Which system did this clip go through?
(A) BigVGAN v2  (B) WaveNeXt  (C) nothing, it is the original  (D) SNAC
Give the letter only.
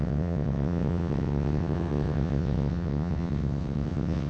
B